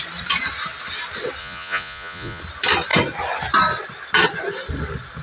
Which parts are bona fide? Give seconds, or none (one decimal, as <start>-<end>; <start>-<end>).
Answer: 0.0-1.4; 2.4-5.2